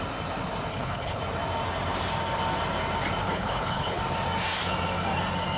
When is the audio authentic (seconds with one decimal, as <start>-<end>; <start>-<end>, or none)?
0.0-0.7; 1.2-3.2; 4.0-5.6